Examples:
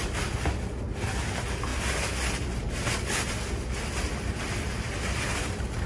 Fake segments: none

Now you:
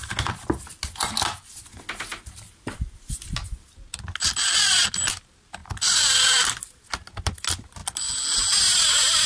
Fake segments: none

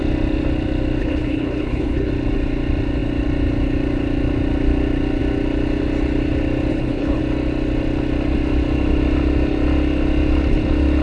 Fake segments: 1.0-2.1 (codec, HILCodec); 6.7-7.2

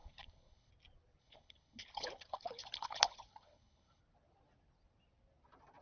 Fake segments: 0.0-0.7 (codec, HILCodec); 1.2-4.0

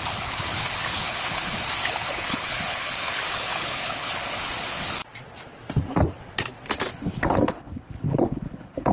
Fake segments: 0.0-5.0 (codec, HILCodec); 6.9-8.9

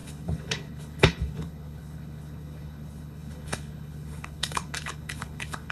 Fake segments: 0.0-5.7 (codec, HILCodec)